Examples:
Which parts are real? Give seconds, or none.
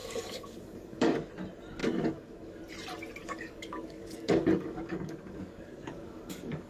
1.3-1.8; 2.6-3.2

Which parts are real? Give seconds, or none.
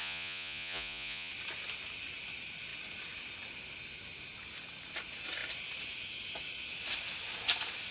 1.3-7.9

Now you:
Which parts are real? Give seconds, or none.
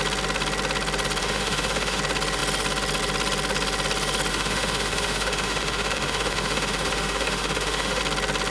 0.0-1.2; 2.0-4.3; 8.0-8.5